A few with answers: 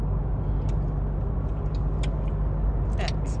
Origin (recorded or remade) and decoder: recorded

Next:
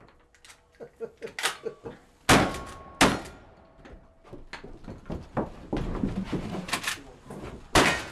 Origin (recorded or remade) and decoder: recorded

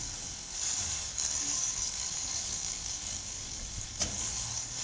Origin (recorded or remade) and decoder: remade, codec, DAC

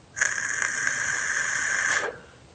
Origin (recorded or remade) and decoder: recorded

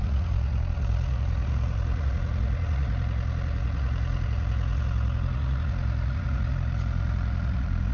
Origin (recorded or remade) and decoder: remade, vocoder, Vocos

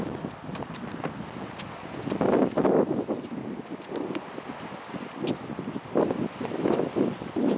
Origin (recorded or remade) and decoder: recorded